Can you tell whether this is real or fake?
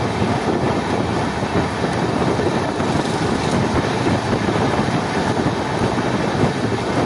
fake